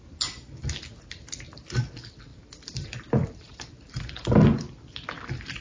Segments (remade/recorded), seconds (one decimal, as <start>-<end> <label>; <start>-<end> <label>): 0.0-2.3 recorded; 2.3-5.6 remade